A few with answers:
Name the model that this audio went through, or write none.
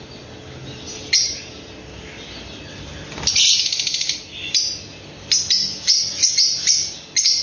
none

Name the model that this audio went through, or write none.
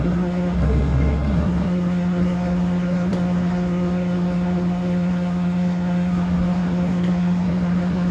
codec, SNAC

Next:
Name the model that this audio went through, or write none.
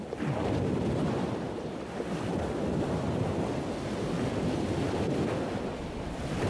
none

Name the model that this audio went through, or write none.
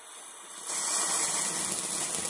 none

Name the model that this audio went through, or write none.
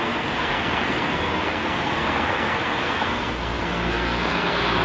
codec, SNAC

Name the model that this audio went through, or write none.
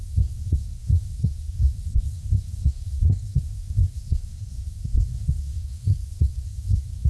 codec, SNAC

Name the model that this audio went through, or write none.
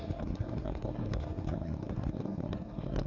codec, SNAC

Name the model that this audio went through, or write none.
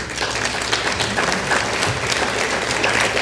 none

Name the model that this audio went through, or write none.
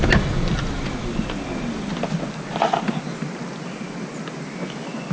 none